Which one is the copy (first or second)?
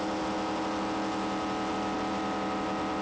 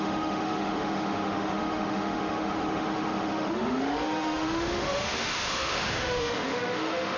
second